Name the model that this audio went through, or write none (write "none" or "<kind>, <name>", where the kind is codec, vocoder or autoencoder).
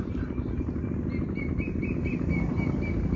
none